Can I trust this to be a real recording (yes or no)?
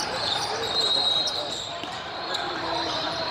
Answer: no